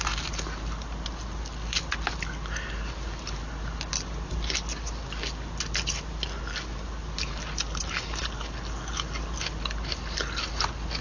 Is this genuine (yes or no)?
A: yes